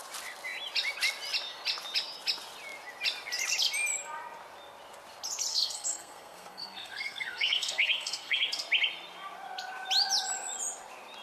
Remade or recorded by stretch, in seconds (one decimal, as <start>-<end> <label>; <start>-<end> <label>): 0.0-5.5 recorded; 5.5-8.5 remade; 8.5-11.2 recorded